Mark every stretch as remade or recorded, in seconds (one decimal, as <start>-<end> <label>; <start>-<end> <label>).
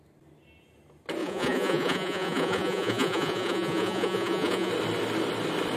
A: 0.0-1.2 recorded; 1.2-4.7 remade; 4.7-5.8 recorded